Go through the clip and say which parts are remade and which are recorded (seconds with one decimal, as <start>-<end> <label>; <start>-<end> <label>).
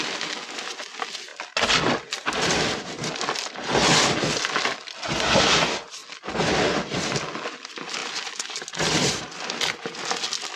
0.0-10.6 recorded